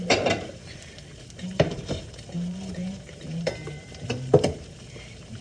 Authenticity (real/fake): fake